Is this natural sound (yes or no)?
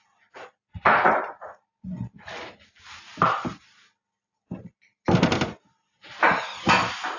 yes